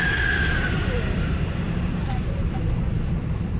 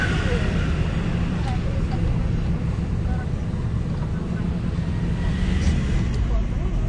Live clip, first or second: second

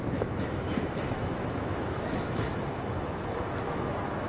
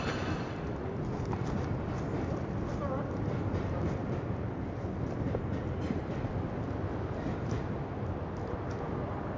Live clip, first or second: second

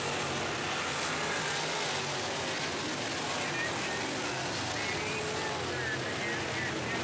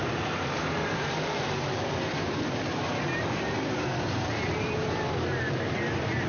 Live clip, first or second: first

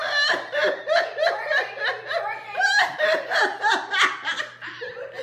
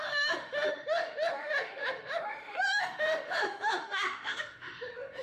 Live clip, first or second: first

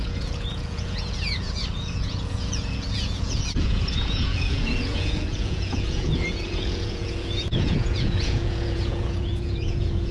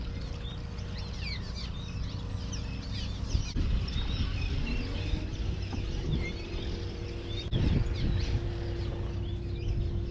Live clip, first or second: second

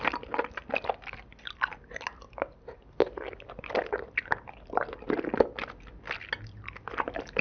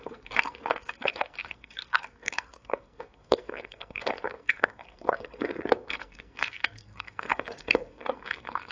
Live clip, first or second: first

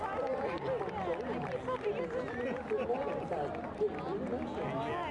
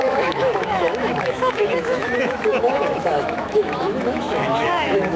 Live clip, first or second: first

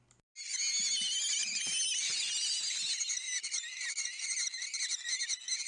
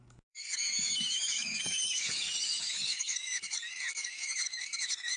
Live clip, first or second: first